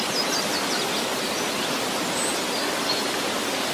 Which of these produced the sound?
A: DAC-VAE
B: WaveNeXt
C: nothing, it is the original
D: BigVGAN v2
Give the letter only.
C